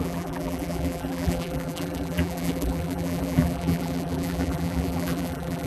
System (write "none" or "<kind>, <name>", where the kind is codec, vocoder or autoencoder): vocoder, BigVGAN v2